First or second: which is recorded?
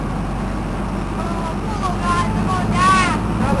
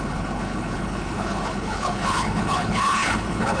first